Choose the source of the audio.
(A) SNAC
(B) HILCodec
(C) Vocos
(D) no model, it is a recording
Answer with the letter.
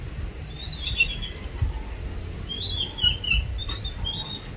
D